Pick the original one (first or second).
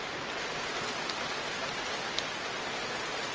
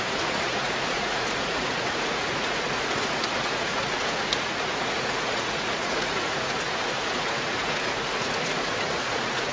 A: first